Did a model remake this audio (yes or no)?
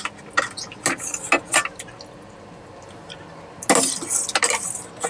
no